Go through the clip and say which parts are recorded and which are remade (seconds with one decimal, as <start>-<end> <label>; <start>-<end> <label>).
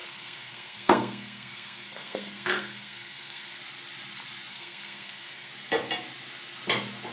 0.0-3.6 remade; 3.6-4.5 recorded; 4.5-5.5 remade; 5.5-7.1 recorded